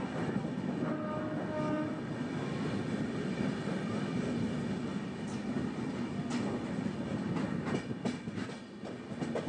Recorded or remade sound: recorded